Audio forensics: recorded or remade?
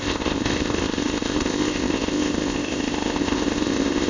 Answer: remade